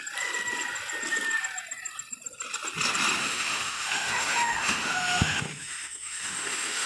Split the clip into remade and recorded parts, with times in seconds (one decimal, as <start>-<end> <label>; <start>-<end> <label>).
0.0-3.2 recorded; 3.2-6.9 remade